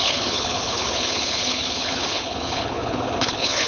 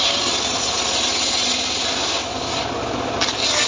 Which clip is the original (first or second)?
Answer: second